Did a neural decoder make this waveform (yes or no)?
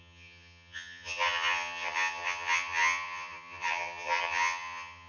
yes